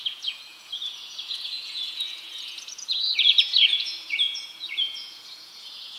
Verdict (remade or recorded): remade